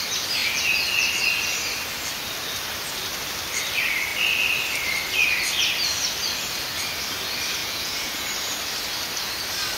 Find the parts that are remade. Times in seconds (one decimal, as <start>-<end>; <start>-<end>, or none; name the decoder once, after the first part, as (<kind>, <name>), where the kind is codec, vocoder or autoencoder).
7.6-8.2 (vocoder, Vocos)